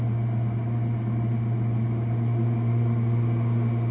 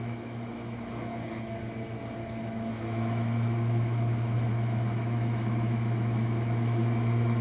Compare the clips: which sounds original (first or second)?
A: first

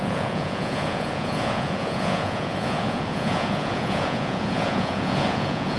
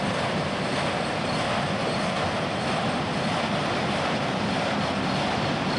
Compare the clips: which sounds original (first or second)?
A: second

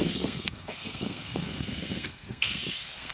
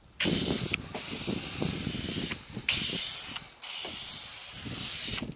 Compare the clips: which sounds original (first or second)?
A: second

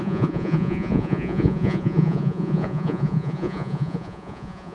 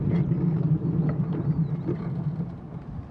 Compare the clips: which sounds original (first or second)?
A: second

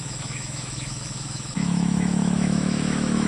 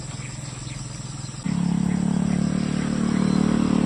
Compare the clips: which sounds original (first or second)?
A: second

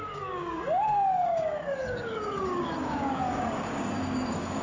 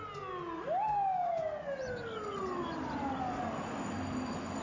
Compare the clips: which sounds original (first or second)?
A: second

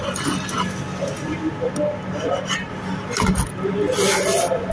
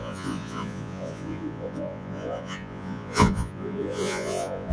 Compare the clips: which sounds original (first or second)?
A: first